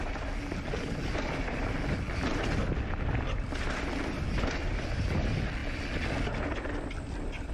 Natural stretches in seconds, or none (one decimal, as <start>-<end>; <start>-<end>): 0.0-7.5